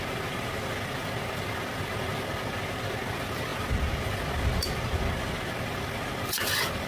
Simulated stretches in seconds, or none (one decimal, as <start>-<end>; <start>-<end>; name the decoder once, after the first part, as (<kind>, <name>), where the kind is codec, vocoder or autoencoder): none